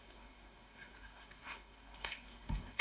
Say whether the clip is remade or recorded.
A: remade